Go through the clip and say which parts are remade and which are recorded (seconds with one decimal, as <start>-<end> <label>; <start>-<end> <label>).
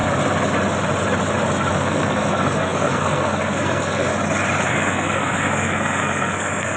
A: 0.0-1.7 recorded; 1.7-4.1 remade; 4.1-4.7 recorded; 4.7-6.8 remade